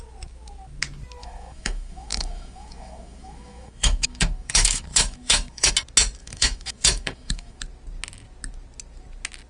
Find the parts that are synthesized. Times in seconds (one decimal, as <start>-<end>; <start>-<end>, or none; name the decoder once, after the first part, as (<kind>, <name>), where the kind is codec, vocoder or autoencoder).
1.2-5.7 (autoencoder, DAC-VAE); 6.2-7.6